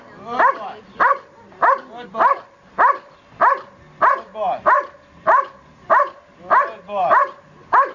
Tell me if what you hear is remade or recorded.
recorded